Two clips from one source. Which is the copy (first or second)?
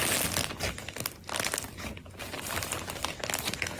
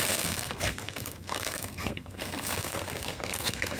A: second